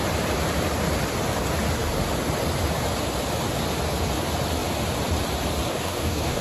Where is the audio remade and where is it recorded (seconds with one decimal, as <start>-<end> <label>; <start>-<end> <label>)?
0.0-5.7 recorded; 5.7-6.4 remade